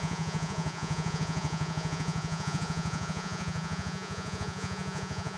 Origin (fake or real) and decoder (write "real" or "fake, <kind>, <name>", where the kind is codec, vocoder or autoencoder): fake, vocoder, Vocos